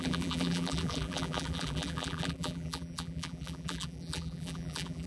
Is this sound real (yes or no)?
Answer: no